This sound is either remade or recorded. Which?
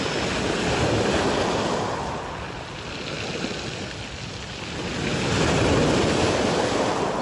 recorded